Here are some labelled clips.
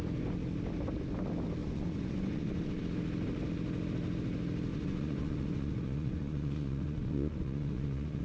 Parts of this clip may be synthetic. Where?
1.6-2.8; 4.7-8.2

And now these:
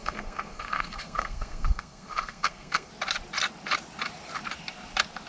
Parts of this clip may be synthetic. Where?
0.0-2.9

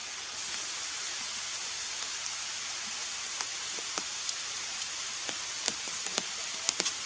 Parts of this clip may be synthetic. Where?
none

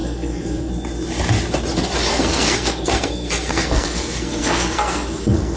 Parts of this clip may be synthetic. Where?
0.0-0.7; 2.1-5.6

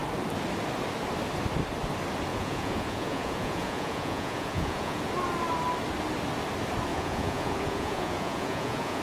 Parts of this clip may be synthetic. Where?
2.3-5.1; 6.9-9.0

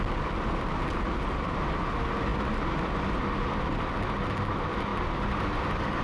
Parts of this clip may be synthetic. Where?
none